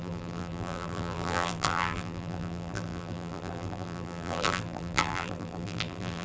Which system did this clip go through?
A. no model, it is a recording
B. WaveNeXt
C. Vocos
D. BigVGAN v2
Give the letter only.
D